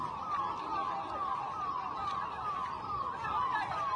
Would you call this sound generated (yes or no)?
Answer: no